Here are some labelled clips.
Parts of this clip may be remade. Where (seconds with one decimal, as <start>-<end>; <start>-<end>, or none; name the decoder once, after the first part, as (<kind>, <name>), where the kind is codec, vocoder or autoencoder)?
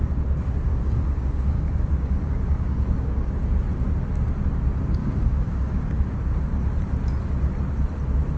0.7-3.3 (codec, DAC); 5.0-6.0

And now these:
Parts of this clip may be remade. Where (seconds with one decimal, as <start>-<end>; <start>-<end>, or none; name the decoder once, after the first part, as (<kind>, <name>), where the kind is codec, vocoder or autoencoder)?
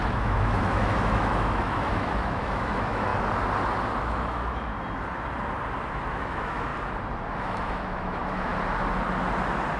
0.0-3.1 (autoencoder, DAC-VAE); 4.0-4.7; 6.1-6.7; 7.3-8.5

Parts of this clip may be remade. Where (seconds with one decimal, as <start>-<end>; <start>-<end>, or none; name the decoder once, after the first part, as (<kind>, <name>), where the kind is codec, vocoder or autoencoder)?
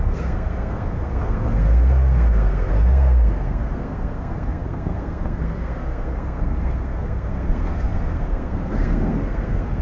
0.0-9.8 (codec, SNAC)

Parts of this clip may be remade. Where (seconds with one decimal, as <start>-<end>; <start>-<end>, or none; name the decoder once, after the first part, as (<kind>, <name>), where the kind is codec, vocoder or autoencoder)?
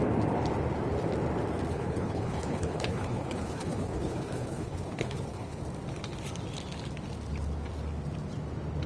1.7-5.6 (codec, HILCodec)